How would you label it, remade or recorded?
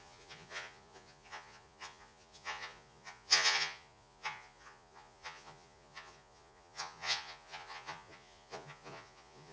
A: remade